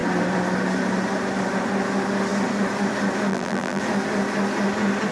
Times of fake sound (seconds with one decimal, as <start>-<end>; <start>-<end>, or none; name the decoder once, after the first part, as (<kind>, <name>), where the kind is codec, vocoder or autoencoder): 3.3-3.8 (vocoder, BigVGAN v2)